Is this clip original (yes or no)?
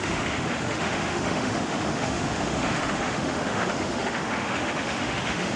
no